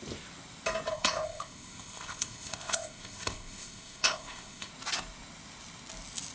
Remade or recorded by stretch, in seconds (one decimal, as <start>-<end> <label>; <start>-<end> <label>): 0.0-0.9 recorded; 0.9-4.7 remade; 4.7-6.3 recorded